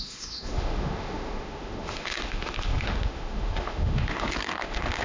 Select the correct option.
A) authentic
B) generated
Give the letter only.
B